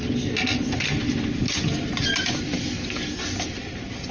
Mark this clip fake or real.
real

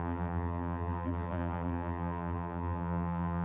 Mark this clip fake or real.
fake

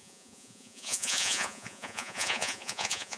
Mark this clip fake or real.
fake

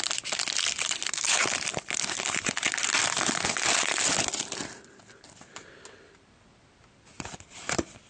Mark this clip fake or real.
real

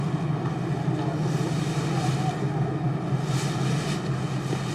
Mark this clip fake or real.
real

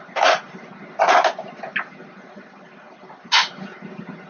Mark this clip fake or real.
real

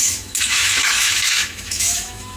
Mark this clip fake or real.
fake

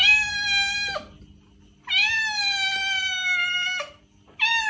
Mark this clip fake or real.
real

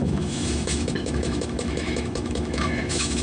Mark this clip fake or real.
fake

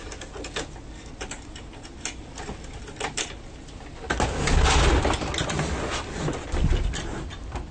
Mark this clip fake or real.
real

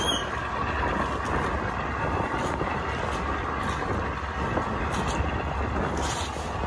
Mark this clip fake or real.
real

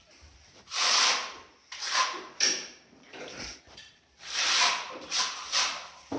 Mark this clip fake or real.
fake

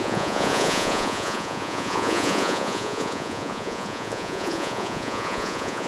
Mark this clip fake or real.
fake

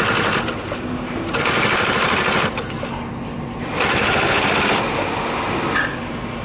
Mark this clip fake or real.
real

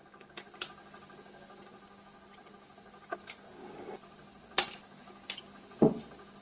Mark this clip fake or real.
real